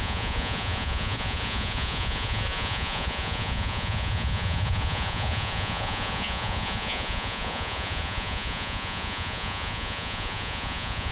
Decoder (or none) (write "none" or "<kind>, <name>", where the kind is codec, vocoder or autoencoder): vocoder, Vocos